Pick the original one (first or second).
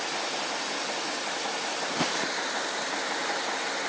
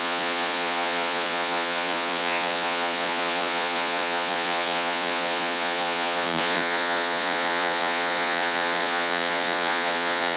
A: first